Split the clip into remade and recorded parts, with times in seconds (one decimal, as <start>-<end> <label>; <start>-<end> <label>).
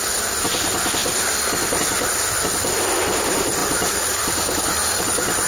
0.0-1.0 recorded; 1.0-1.8 remade; 1.8-3.6 recorded; 3.6-5.0 remade; 5.0-5.5 recorded